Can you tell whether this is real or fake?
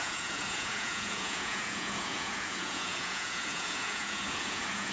fake